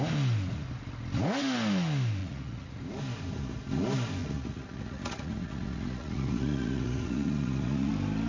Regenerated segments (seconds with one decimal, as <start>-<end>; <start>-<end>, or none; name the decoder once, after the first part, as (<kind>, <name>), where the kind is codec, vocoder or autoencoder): 2.2-2.8 (vocoder, Vocos); 4.2-7.9